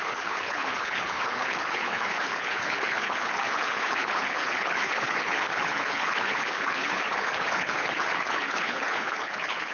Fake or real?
fake